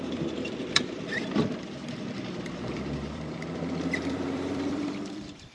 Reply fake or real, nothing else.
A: fake